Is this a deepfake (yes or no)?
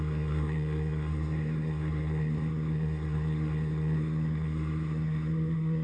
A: yes